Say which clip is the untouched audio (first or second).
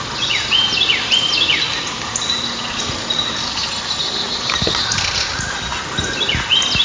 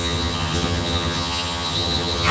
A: first